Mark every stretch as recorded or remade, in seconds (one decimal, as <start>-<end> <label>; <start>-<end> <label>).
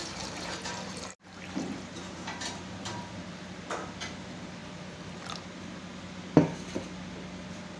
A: 0.0-2.6 remade; 2.6-7.8 recorded